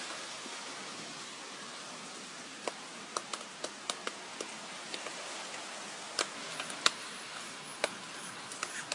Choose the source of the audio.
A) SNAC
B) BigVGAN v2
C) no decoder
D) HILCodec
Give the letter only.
C